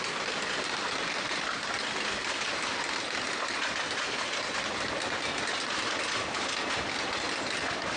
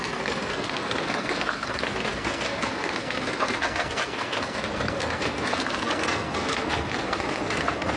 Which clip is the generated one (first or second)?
second